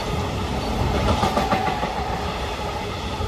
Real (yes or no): yes